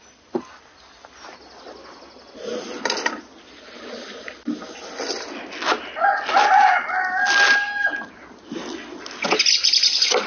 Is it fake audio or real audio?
real